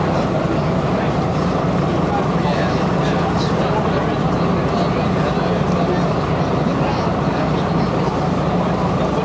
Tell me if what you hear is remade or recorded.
recorded